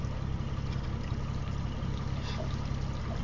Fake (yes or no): no